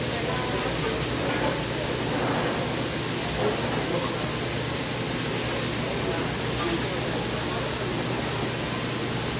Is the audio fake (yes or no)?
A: no